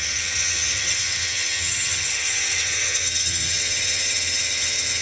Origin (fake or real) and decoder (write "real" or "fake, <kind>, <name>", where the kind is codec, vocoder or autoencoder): fake, vocoder, HiFi-GAN